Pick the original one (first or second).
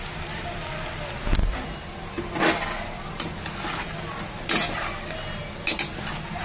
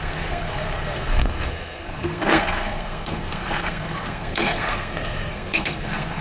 first